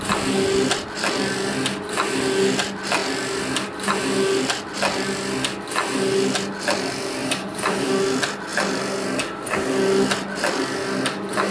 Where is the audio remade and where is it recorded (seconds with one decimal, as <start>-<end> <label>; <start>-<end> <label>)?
0.0-7.2 recorded; 7.2-7.9 remade; 7.9-11.5 recorded